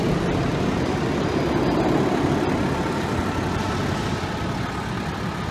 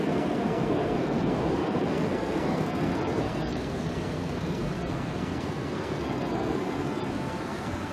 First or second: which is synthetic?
second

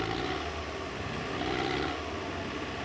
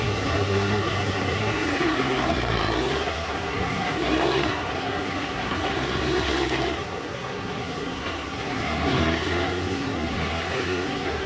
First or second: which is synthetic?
second